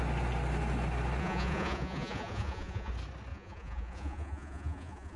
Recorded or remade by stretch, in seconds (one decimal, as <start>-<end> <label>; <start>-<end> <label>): 0.0-1.2 recorded; 1.2-2.9 remade; 2.9-3.3 recorded; 3.3-5.2 remade